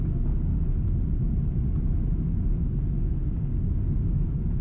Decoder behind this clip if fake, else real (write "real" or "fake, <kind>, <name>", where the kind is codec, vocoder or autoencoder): real